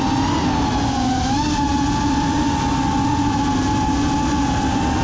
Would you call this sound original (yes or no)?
yes